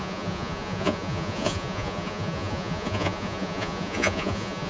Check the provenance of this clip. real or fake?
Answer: fake